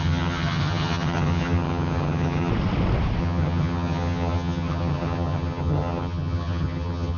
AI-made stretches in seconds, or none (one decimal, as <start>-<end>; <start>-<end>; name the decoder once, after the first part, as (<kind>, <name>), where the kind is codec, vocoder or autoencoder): 0.0-2.5 (vocoder, HiFi-GAN); 3.2-7.2